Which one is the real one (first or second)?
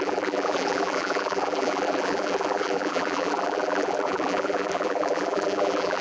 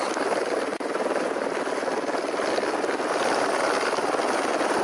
second